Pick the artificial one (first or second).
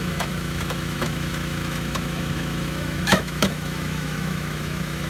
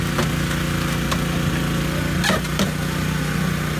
first